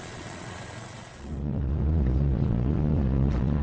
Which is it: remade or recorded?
remade